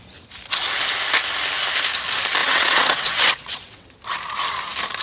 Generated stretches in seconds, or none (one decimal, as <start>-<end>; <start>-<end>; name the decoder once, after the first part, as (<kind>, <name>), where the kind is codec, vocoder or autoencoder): 2.4-3.9 (vocoder, WaveNeXt)